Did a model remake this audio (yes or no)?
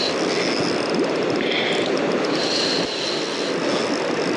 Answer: no